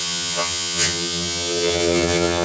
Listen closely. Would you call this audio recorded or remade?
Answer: remade